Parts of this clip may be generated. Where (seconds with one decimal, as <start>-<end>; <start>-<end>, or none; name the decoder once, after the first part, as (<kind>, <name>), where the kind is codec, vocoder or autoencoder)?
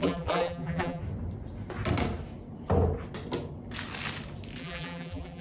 0.0-1.0 (vocoder, BigVGAN v2); 4.6-5.4